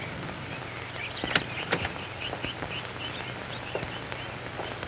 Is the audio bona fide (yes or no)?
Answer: yes